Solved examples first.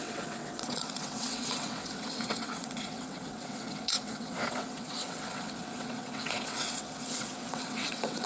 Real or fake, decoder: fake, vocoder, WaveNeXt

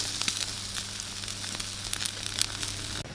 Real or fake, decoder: real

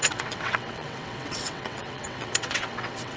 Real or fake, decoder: fake, vocoder, WaveNeXt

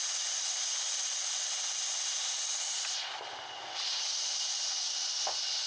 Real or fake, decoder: real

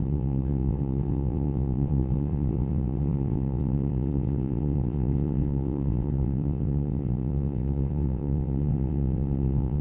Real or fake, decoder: fake, vocoder, WaveNeXt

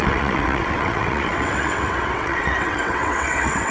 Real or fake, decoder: fake, vocoder, WaveNeXt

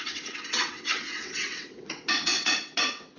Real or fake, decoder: fake, vocoder, WaveNeXt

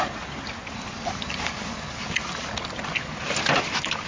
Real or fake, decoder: real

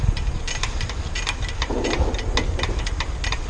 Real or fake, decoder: real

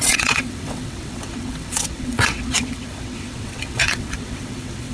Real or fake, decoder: fake, vocoder, WaveNeXt